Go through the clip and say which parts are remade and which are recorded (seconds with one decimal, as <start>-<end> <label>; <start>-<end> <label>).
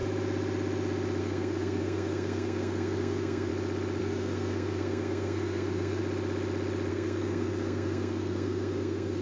0.0-1.2 recorded; 1.2-3.5 remade; 3.5-4.0 recorded; 4.0-6.0 remade; 6.0-6.9 recorded; 6.9-9.2 remade